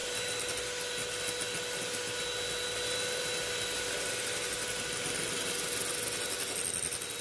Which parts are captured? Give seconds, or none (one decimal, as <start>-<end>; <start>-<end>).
0.0-7.2